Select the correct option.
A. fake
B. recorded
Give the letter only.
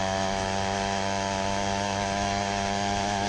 A